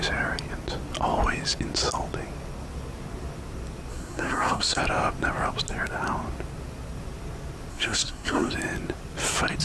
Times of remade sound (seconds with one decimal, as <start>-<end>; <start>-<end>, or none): 3.9-4.8; 7.7-8.5